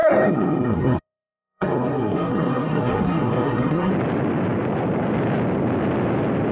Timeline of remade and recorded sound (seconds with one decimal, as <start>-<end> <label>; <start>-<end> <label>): 0.0-3.9 remade; 3.9-6.5 recorded

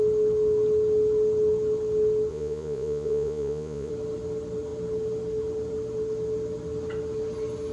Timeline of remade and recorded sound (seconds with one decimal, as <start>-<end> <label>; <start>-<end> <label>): 0.0-2.3 recorded; 2.3-3.9 remade; 3.9-7.7 recorded